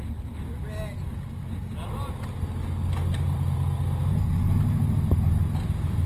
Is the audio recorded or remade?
recorded